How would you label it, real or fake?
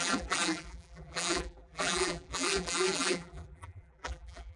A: fake